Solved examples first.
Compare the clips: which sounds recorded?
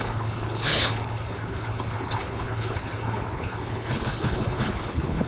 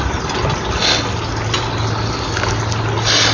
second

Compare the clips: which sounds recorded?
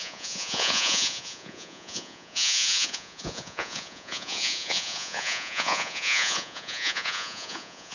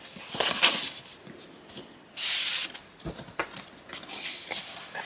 second